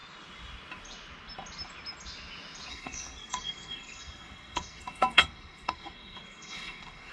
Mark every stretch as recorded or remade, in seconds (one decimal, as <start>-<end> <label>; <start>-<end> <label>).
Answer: 0.0-2.7 recorded; 2.7-7.1 remade